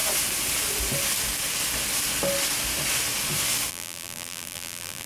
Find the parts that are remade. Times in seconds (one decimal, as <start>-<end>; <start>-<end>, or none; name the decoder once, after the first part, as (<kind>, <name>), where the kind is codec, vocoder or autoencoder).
3.7-5.1 (vocoder, BigVGAN v2)